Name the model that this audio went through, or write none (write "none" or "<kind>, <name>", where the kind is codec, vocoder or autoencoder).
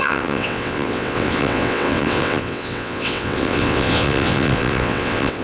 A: vocoder, WaveNeXt